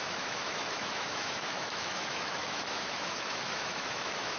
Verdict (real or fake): fake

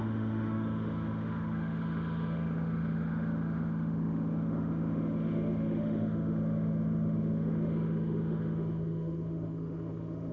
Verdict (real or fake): fake